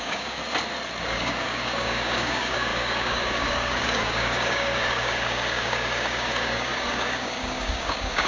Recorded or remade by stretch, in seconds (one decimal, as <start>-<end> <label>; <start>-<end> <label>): 0.0-0.4 remade; 0.4-1.0 recorded; 1.0-8.3 remade